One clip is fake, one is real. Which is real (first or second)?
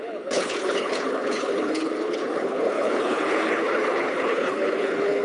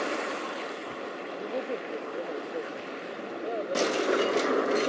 second